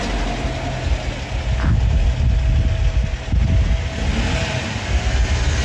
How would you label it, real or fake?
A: real